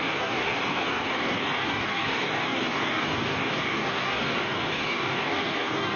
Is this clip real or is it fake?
fake